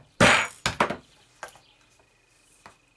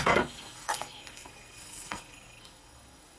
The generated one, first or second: second